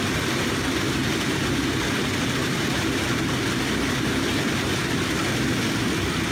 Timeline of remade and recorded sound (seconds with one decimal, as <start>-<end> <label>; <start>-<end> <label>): 0.0-6.3 recorded